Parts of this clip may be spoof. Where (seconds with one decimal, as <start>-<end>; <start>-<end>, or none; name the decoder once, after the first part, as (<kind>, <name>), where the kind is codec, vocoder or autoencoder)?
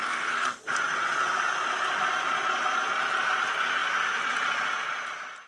0.0-0.6 (codec, SNAC)